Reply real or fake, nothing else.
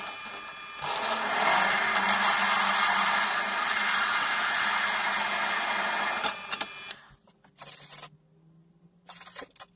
real